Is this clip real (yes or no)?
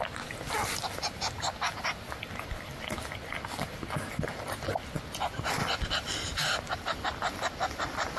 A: yes